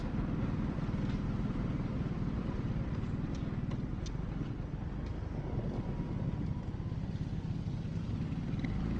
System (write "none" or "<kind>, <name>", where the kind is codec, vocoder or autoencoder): none